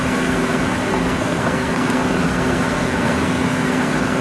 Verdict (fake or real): fake